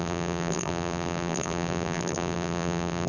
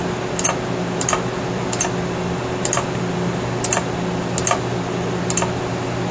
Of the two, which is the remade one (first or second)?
first